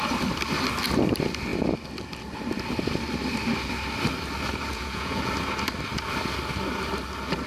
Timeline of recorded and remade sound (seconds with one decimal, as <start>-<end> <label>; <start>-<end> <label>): 0.0-4.7 recorded; 4.7-5.3 remade; 5.3-7.5 recorded